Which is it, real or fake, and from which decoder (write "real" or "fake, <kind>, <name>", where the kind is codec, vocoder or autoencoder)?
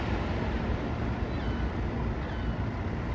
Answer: real